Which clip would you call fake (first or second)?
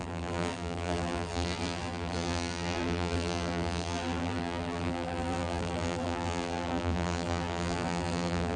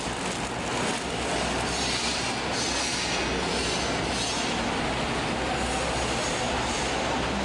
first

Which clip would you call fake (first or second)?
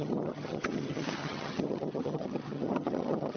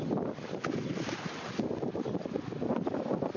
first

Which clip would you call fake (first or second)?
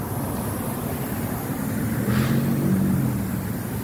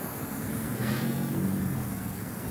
second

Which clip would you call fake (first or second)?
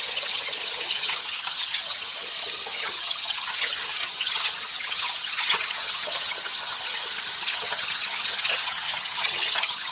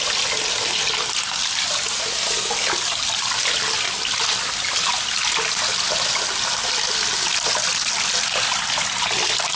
first